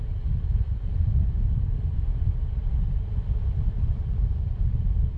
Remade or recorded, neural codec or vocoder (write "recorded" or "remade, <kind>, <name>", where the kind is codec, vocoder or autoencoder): recorded